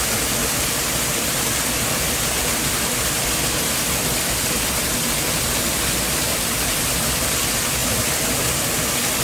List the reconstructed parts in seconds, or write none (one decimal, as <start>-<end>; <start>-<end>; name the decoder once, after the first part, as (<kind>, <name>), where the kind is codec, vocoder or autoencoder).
none